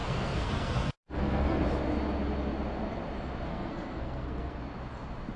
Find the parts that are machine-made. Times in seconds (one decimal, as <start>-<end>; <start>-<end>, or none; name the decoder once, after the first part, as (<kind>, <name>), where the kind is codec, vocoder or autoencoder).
0.0-1.6 (codec, SNAC); 3.5-4.6